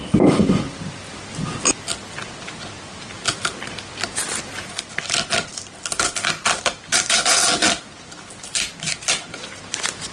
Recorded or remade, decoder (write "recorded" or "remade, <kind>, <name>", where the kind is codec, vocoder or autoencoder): recorded